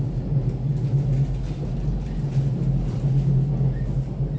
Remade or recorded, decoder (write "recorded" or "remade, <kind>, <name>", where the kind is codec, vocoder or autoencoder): recorded